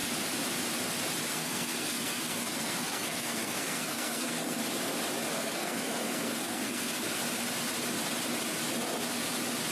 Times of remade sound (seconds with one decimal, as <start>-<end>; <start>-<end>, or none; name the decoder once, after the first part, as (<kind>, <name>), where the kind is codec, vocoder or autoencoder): 1.3-4.6 (codec, SNAC); 5.3-7.2